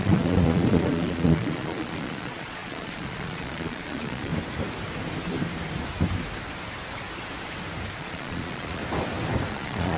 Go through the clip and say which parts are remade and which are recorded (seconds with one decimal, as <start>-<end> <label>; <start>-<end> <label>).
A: 0.0-4.3 remade; 4.3-8.0 recorded; 8.0-8.8 remade; 8.8-9.5 recorded; 9.5-10.0 remade